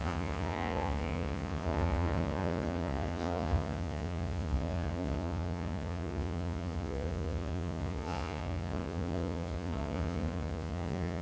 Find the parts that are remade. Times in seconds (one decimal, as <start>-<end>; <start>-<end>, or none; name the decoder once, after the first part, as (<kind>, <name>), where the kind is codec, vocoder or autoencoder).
0.0-11.2 (vocoder, Vocos)